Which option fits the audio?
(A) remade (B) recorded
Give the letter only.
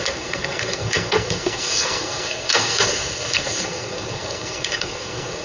A